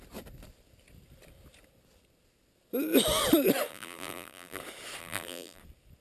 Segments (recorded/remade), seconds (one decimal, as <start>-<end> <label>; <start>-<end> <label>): 0.0-3.7 recorded; 3.7-4.6 remade; 4.6-5.0 recorded; 5.0-5.6 remade; 5.6-6.0 recorded